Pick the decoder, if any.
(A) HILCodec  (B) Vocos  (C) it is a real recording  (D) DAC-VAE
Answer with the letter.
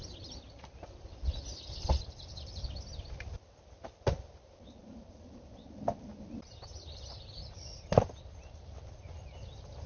C